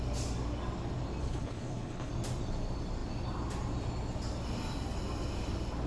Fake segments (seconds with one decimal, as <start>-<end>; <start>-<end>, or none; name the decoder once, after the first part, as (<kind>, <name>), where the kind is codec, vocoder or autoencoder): 1.2-2.1 (codec, HILCodec)